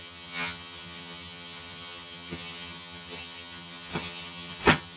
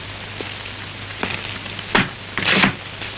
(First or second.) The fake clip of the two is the first